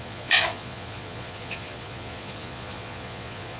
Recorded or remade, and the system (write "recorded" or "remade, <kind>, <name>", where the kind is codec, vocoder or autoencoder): remade, vocoder, Vocos